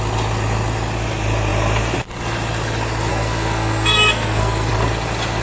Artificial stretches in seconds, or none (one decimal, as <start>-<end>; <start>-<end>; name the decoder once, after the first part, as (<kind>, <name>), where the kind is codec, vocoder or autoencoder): 3.1-4.7 (codec, SNAC)